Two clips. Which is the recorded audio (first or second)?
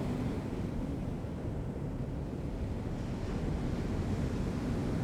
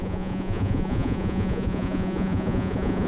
first